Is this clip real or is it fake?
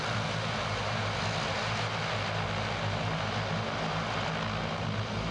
real